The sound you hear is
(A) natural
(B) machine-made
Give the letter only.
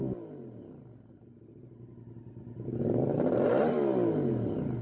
A